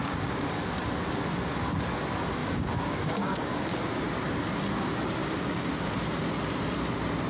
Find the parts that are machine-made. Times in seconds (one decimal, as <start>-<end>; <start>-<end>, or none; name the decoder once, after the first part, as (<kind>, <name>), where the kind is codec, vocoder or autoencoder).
0.0-0.5 (codec, DAC); 2.4-4.1; 5.2-5.9